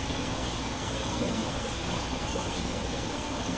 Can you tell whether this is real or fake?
fake